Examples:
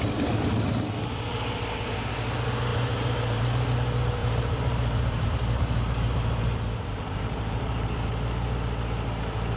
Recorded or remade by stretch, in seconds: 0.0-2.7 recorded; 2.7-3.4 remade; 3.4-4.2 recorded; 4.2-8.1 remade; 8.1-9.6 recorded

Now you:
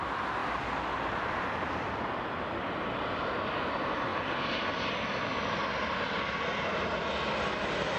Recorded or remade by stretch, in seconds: 0.0-8.0 recorded

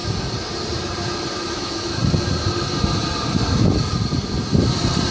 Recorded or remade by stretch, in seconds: 0.0-1.5 recorded; 1.5-2.0 remade; 2.0-5.1 recorded

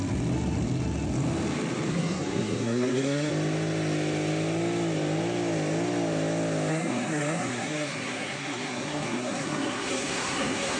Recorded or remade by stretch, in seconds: 0.0-1.9 recorded; 1.9-3.3 remade; 3.3-6.7 recorded; 6.7-10.8 remade

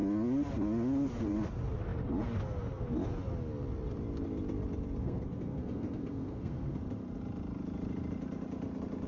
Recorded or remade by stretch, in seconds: 0.0-5.0 recorded; 5.0-6.8 remade; 6.8-9.1 recorded

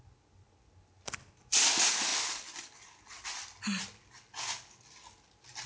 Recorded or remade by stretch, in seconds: 0.0-5.7 recorded